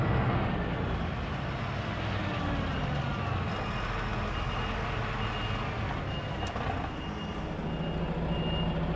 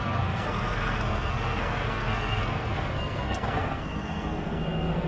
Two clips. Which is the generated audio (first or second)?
second